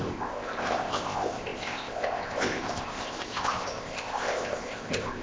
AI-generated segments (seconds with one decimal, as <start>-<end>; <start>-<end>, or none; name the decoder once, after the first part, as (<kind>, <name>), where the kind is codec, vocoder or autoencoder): 0.0-5.2 (codec, ZipCodec)